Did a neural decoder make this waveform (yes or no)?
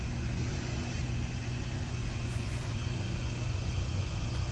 yes